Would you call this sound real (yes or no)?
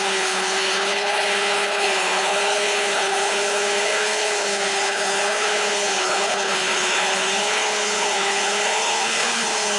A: no